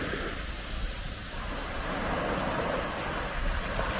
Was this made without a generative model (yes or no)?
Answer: yes